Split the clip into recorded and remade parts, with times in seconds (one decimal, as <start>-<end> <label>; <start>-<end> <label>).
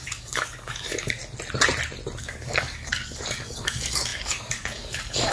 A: 0.0-1.2 remade; 1.2-2.2 recorded; 2.2-5.3 remade